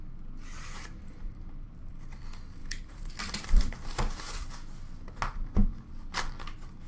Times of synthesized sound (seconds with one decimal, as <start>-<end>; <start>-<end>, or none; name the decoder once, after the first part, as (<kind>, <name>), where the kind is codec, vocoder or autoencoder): 0.4-1.9 (vocoder, BigVGAN v2); 2.6-4.5